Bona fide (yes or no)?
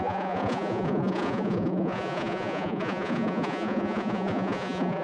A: no